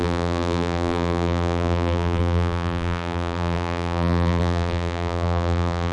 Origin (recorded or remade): remade